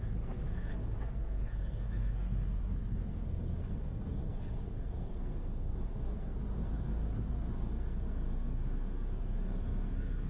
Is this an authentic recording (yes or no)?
no